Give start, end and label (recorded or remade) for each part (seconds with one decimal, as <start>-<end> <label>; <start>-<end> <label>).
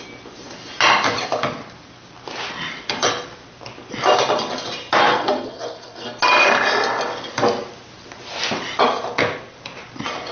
0.0-5.1 recorded; 5.1-6.2 remade; 6.2-10.3 recorded